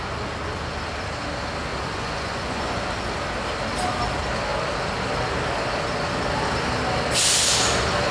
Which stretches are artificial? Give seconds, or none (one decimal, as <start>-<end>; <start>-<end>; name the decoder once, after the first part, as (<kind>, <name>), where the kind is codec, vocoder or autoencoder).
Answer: 1.7-2.8 (vocoder, Vocos)